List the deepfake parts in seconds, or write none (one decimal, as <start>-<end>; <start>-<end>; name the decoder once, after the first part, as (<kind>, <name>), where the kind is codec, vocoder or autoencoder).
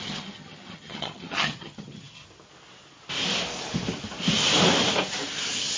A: 0.0-2.2 (vocoder, HiFi-GAN)